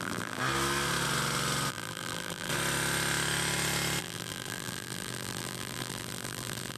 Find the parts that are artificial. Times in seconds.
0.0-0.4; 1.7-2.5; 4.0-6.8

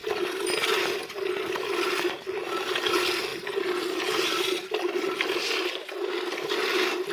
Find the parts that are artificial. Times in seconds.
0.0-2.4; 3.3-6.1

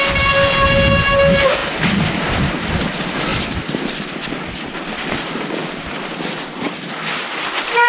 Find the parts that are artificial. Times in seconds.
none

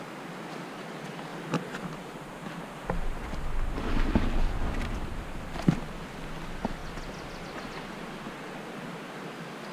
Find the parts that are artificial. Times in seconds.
1.3-3.2

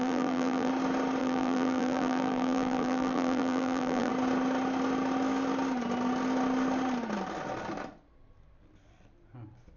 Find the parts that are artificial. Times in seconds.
0.0-0.7; 1.2-4.1

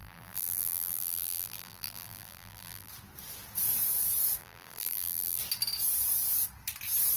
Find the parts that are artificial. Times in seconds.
0.0-2.9; 4.4-5.4